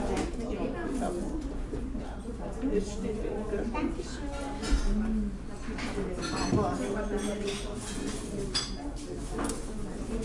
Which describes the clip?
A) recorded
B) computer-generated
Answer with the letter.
A